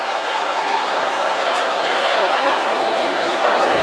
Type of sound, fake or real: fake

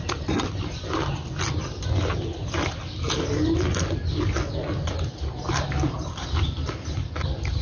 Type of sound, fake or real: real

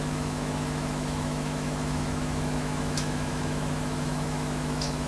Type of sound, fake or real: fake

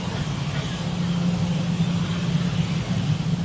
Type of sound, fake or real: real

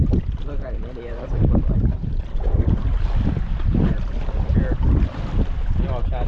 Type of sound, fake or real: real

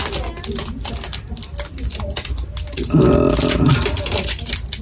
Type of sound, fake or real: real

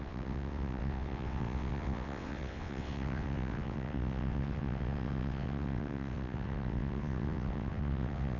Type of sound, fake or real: fake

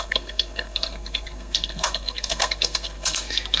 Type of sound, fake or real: fake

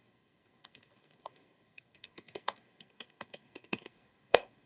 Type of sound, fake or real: fake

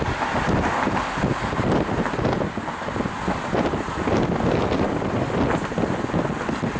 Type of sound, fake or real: real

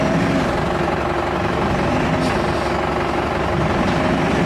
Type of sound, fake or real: real